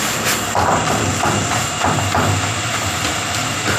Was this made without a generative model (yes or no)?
yes